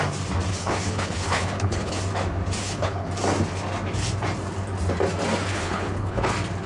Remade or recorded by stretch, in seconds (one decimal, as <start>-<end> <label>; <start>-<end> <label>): 0.0-0.5 recorded; 0.5-2.0 remade; 2.0-2.6 recorded; 2.6-3.1 remade; 3.1-5.5 recorded; 5.5-6.3 remade; 6.3-6.7 recorded